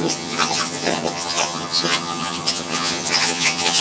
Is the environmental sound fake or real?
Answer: fake